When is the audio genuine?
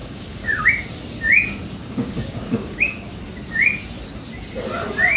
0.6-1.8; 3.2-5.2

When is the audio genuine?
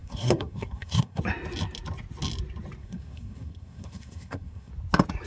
1.2-2.8; 4.7-5.3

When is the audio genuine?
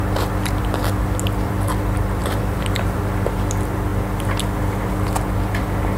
0.0-2.2; 3.0-6.0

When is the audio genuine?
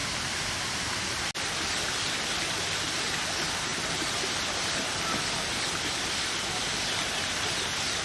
0.0-8.0